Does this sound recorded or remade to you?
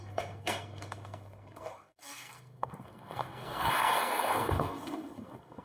remade